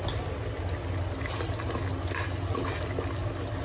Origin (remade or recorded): recorded